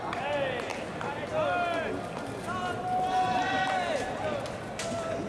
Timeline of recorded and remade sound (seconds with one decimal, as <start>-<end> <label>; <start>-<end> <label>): 0.0-5.3 recorded